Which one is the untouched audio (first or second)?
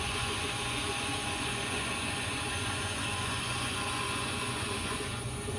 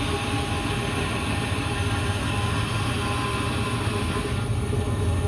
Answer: second